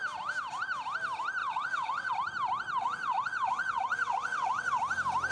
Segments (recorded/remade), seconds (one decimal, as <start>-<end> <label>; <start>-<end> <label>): 0.0-1.4 recorded; 1.4-2.1 remade; 2.1-2.8 recorded; 2.8-4.8 remade; 4.8-5.3 recorded